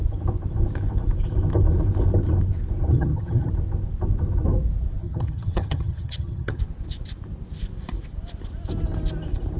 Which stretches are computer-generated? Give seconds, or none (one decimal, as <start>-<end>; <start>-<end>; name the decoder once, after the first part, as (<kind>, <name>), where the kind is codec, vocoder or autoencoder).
2.9-3.5 (vocoder, HiFi-GAN); 5.0-6.6